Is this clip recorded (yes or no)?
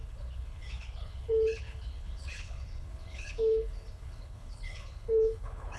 no